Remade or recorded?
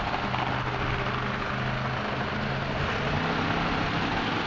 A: recorded